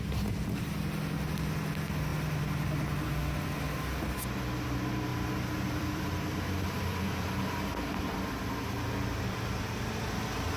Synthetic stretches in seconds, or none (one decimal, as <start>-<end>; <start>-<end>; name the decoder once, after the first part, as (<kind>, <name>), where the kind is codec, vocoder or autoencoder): 5.1-7.7 (vocoder, BigVGAN v2)